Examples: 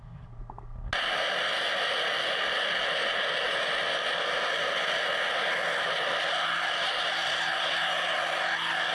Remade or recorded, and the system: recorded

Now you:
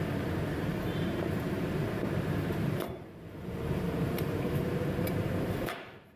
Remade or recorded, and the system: remade, vocoder, BigVGAN v2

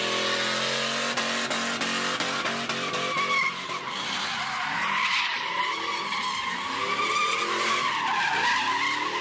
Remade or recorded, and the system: recorded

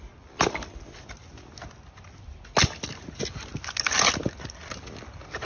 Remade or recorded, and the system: recorded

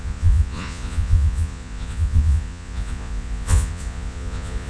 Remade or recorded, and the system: remade, vocoder, Vocos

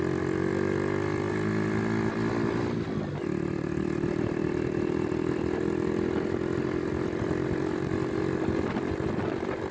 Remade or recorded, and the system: recorded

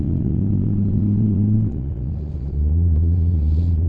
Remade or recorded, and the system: remade, vocoder, Vocos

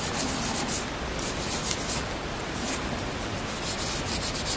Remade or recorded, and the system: recorded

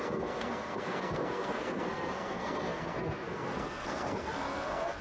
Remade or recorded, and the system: remade, codec, SNAC